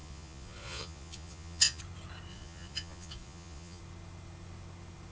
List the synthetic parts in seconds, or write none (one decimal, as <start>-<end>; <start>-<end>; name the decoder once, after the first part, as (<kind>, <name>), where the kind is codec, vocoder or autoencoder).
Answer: 0.0-1.8 (vocoder, Vocos); 2.3-3.8